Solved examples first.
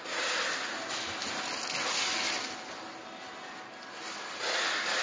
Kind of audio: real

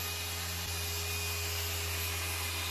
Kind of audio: real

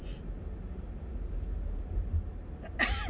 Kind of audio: real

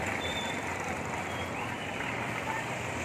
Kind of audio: fake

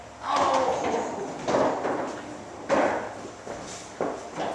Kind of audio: real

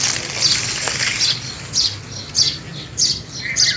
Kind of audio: real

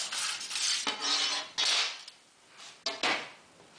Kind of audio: real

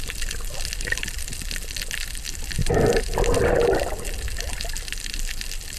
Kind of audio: real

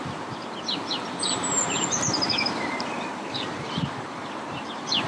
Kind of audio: fake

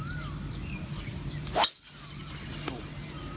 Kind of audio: real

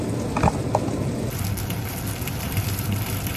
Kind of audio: fake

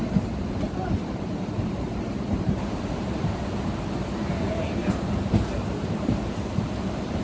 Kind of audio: fake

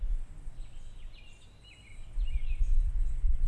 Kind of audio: real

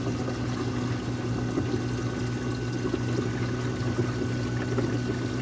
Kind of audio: real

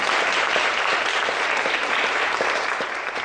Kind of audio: fake